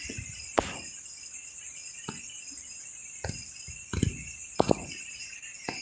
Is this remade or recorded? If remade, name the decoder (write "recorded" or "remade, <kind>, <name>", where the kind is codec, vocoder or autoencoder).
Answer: recorded